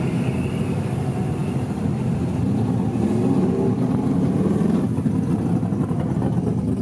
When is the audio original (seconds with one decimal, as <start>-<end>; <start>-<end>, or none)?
0.0-6.8